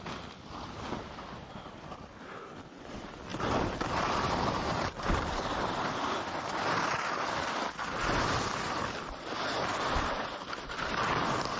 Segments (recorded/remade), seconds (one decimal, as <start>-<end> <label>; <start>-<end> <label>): 0.0-3.3 recorded; 3.3-5.6 remade; 5.6-11.6 recorded